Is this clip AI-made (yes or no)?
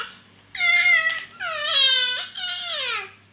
no